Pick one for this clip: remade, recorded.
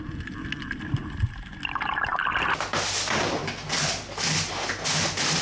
recorded